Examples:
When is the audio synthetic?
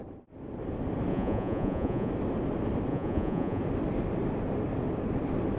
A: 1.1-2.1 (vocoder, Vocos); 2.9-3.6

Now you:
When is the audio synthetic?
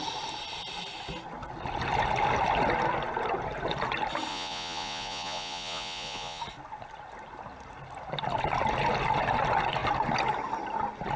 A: 4.3-6.4 (vocoder, Vocos)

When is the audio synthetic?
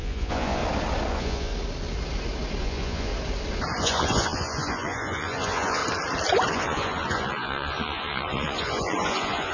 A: 0.0-0.6 (vocoder, Vocos); 1.1-1.5; 2.6-3.1; 3.8-5.8; 6.5-9.5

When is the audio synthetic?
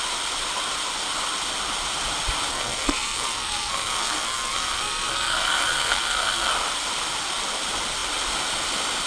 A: 2.5-6.5 (codec, SNAC)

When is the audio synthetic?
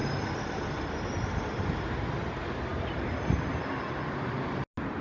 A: none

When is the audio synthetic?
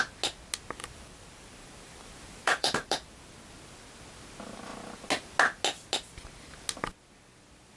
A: 0.8-3.4 (vocoder, BigVGAN v2)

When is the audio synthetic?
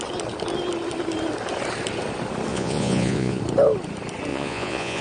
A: 2.5-3.4 (vocoder, Vocos); 4.3-5.0